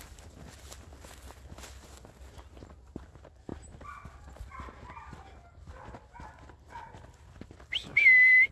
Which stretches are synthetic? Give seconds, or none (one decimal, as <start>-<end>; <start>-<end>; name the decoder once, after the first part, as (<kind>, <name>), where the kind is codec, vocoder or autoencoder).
none